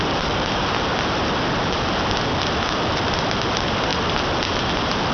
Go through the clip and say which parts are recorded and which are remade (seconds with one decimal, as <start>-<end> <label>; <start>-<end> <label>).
0.0-5.1 recorded